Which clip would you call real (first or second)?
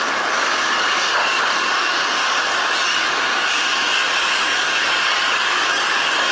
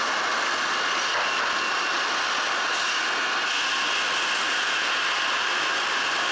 second